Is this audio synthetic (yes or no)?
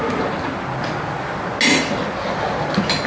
no